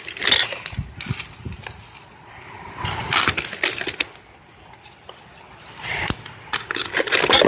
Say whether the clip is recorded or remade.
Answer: recorded